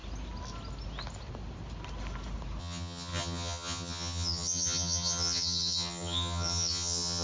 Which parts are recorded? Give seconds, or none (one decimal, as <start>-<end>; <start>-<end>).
0.0-2.6